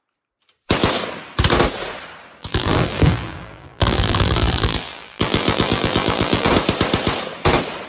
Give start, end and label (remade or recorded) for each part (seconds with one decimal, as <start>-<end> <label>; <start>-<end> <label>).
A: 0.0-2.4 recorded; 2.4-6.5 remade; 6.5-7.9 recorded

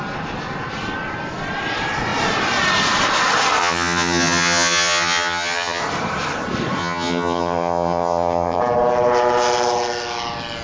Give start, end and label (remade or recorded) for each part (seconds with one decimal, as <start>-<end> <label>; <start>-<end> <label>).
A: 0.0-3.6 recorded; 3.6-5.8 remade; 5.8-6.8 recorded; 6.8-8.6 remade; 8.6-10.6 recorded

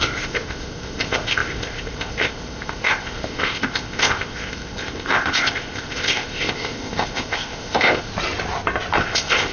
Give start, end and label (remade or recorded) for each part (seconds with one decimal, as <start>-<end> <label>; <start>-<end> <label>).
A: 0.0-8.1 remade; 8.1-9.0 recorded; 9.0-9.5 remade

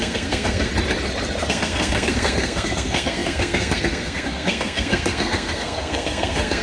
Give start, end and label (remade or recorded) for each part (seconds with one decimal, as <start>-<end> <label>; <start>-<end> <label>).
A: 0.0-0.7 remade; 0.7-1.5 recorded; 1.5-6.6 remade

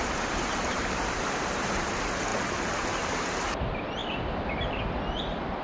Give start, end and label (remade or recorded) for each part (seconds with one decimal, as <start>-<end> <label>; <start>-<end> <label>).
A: 0.0-1.9 remade; 1.9-2.3 recorded; 2.3-3.6 remade; 3.6-5.6 recorded